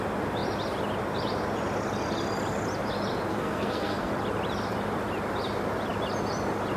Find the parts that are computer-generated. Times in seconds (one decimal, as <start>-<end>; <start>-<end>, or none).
3.3-4.1